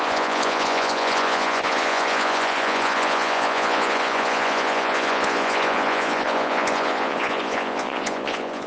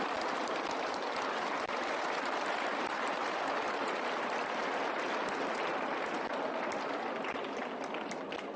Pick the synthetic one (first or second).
first